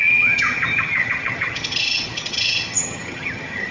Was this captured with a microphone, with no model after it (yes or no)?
no